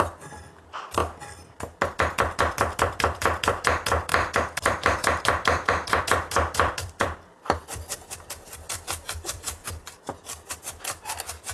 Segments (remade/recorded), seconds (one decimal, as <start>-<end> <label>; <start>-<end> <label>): 0.0-1.0 remade; 1.0-1.9 recorded; 1.9-9.6 remade; 9.6-10.6 recorded; 10.6-11.5 remade